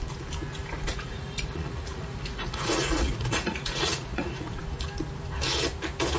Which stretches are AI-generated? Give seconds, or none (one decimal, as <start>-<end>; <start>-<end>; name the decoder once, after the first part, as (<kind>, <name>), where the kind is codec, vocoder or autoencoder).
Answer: 0.9-4.6 (vocoder, Vocos)